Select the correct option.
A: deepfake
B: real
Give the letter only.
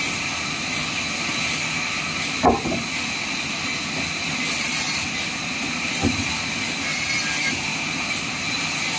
B